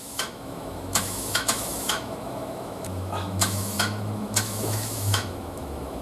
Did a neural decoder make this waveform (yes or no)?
yes